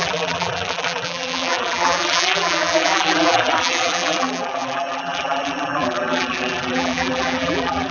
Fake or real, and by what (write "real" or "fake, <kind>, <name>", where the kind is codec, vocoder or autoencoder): fake, vocoder, BigVGAN v2